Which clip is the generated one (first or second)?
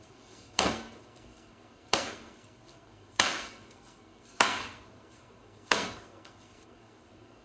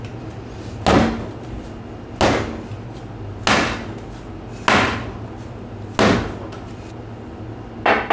first